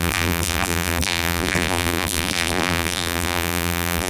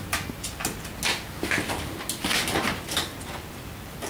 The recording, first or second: second